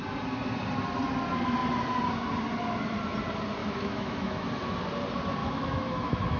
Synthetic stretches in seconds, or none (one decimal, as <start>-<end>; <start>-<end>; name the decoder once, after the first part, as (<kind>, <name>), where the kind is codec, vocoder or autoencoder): 3.6-4.7 (autoencoder, DAC-VAE); 5.4-6.4